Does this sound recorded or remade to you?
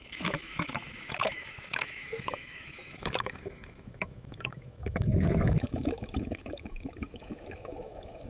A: remade